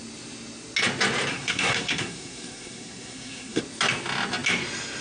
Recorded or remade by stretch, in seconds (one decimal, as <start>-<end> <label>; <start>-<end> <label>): 0.0-1.3 recorded; 1.3-3.6 remade; 3.6-5.0 recorded